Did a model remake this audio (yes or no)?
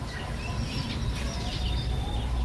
no